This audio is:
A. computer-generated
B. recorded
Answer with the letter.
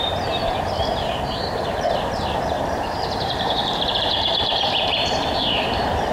A